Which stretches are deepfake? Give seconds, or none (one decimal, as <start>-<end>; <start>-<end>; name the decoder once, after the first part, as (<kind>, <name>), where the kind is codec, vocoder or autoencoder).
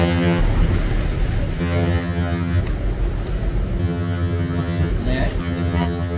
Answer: 0.0-0.4 (vocoder, HiFi-GAN); 1.6-2.6; 3.8-4.9; 5.4-6.2